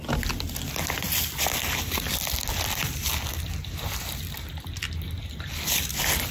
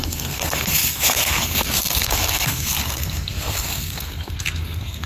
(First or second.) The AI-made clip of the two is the second